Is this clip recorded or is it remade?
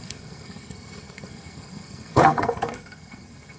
remade